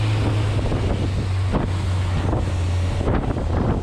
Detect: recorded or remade recorded